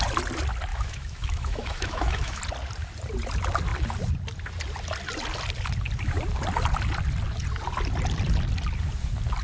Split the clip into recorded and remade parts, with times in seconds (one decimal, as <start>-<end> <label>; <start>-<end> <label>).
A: 0.0-0.7 recorded; 0.7-2.4 remade; 2.4-9.4 recorded